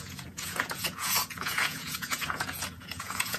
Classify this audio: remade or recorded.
remade